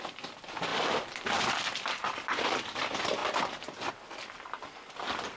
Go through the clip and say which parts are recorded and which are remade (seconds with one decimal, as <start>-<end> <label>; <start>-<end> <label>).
0.0-0.7 recorded; 0.7-1.4 remade; 1.4-5.4 recorded

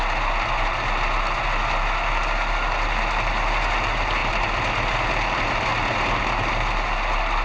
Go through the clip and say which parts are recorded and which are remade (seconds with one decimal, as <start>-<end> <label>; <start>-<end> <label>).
0.0-7.4 recorded